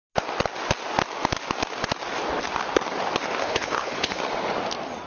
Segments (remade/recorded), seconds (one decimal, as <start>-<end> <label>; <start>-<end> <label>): 0.0-3.4 recorded; 3.4-4.2 remade; 4.2-5.1 recorded